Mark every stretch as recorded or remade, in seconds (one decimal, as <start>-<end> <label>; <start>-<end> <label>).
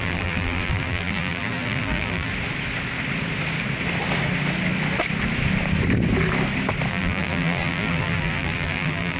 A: 0.0-2.3 remade; 2.3-6.9 recorded; 6.9-9.2 remade